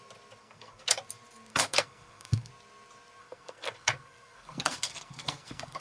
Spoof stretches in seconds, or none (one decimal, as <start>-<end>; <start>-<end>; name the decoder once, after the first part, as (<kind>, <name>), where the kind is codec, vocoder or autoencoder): 0.4-1.0 (codec, SNAC); 1.5-2.5; 3.2-5.8